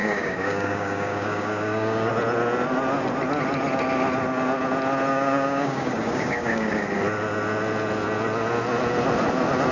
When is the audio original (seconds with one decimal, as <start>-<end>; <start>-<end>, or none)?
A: 2.1-5.1; 6.8-9.7